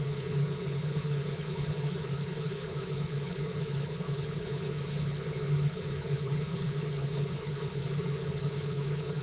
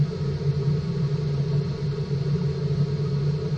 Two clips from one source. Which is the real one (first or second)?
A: second